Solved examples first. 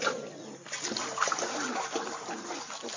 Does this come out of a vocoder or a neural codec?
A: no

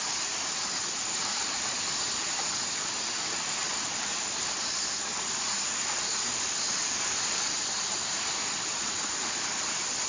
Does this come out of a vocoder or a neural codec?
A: yes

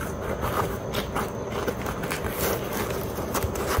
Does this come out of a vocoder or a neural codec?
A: no